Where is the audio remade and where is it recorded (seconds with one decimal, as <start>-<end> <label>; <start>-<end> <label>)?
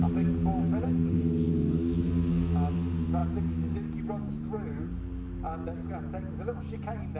0.0-7.2 recorded